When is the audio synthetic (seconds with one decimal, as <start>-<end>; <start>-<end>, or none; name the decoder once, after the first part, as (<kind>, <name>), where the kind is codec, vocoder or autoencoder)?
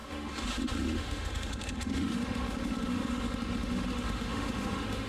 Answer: 0.0-5.1 (autoencoder, DAC-VAE)